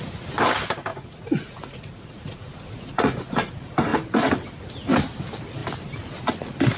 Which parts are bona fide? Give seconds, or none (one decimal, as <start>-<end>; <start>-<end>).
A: 0.0-0.9; 3.5-6.8